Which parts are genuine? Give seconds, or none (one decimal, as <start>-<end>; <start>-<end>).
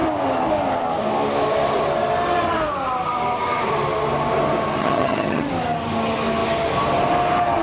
0.0-4.8; 5.5-7.6